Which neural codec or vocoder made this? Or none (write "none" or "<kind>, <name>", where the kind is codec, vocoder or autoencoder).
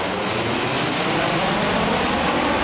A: none